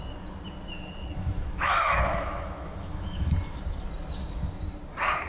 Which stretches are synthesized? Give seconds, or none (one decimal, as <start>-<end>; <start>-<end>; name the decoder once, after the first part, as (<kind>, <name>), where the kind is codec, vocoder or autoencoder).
1.1-3.3 (autoencoder, DAC-VAE)